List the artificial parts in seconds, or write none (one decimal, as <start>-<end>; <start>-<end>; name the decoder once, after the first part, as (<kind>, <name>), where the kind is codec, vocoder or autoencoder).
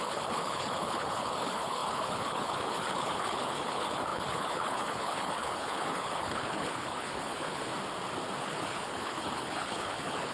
0.0-7.7 (codec, HILCodec); 8.4-10.3